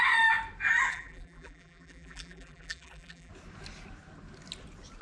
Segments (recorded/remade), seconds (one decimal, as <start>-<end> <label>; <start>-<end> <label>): 0.0-0.9 recorded; 0.9-3.3 remade; 3.3-5.0 recorded